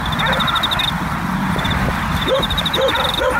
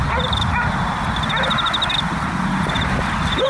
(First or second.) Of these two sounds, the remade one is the first